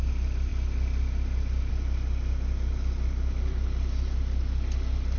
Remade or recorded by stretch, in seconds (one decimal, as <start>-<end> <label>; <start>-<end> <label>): 0.0-5.2 recorded